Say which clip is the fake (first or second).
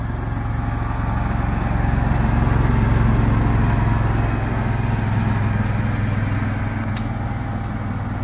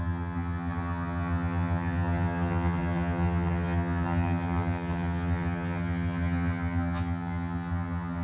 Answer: second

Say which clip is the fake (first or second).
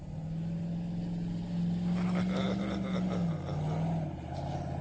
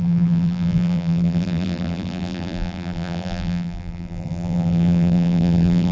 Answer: second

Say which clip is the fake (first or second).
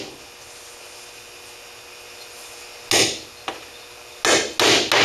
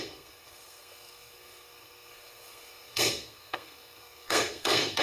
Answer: second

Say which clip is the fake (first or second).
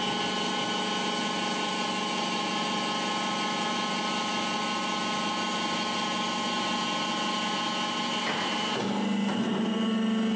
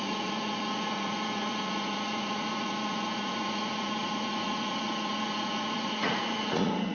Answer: second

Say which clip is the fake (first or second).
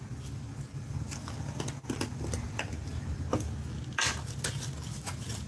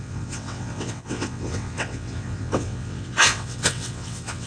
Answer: second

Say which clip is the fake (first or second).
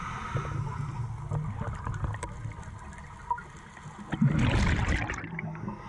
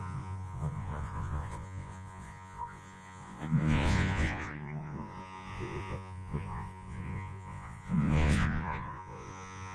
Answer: second